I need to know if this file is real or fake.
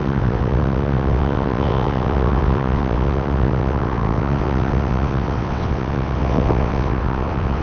fake